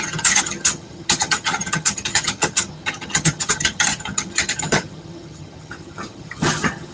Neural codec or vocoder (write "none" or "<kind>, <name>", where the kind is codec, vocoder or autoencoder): vocoder, HiFi-GAN